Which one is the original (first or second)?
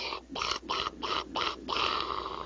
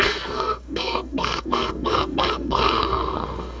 first